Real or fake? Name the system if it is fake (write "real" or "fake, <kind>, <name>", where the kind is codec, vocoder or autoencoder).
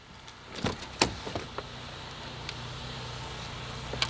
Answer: real